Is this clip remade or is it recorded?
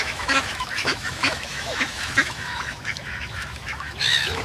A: remade